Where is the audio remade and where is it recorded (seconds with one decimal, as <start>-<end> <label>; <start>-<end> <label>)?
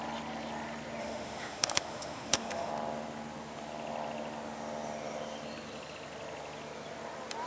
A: 0.0-1.0 recorded; 1.0-2.7 remade; 2.7-7.5 recorded